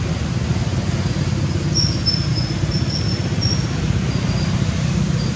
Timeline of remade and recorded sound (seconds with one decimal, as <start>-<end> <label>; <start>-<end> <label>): 0.0-5.4 recorded